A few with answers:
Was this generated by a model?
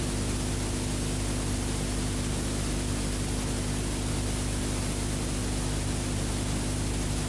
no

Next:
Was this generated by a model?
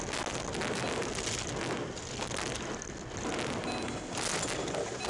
no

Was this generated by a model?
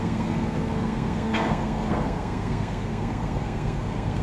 yes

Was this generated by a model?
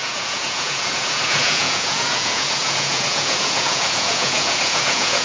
yes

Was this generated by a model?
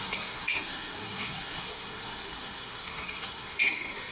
yes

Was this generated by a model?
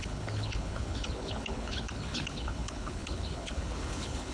yes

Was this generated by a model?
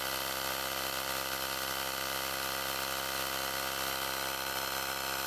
no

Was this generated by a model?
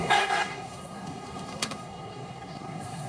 yes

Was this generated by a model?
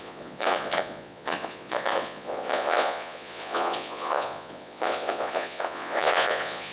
yes